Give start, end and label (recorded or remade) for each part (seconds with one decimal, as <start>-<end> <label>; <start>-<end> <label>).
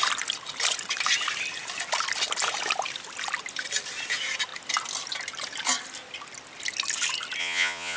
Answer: 0.0-7.4 recorded; 7.4-8.0 remade